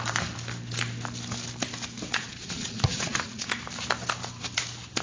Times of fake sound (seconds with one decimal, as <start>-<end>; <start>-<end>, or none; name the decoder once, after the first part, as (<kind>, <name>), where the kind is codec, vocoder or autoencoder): 2.1-3.5 (vocoder, Vocos)